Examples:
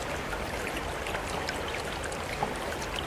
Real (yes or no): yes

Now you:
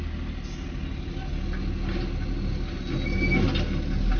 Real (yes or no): yes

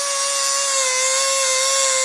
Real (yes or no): yes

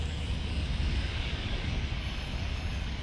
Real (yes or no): no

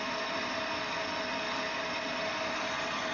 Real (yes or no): yes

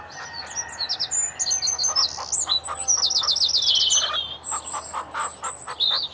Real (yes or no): yes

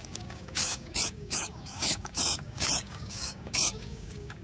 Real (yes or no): no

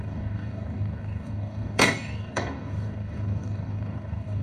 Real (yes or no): no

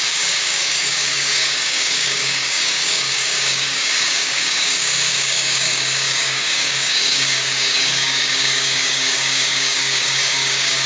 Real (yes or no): no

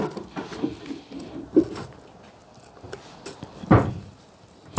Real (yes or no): yes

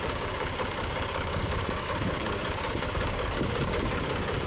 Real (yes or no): no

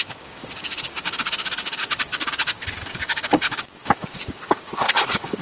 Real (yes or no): no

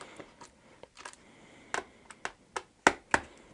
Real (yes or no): yes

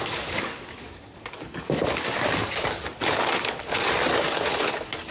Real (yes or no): no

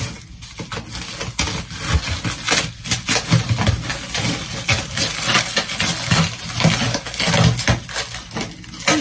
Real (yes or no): yes